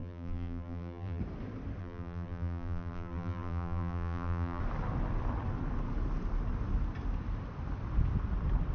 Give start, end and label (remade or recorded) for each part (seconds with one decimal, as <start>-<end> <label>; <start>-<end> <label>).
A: 0.0-1.2 remade; 1.2-1.8 recorded; 1.8-4.6 remade; 4.6-8.7 recorded